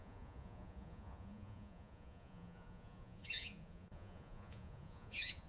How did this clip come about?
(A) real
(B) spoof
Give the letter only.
B